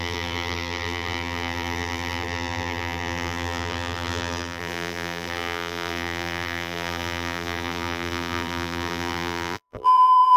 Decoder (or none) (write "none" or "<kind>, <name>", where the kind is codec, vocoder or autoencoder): vocoder, BigVGAN v2